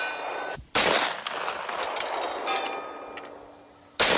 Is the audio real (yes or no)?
yes